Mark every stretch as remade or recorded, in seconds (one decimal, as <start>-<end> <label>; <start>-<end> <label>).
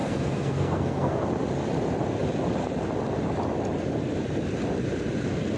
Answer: 0.0-1.2 remade; 1.2-5.6 recorded